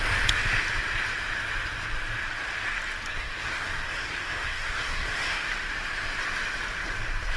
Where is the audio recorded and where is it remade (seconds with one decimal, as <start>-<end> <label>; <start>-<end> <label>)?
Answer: 0.0-3.1 recorded; 3.1-5.5 remade; 5.5-7.4 recorded